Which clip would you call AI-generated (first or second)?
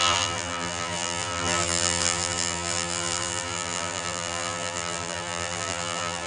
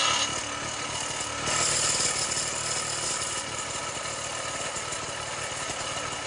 first